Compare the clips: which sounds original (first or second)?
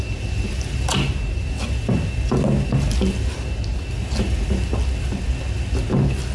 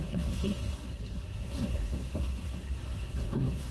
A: first